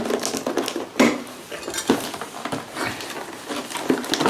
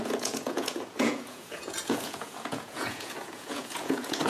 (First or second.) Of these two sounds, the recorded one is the first